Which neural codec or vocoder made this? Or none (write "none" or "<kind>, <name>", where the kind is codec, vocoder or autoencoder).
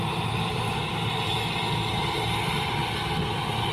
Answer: none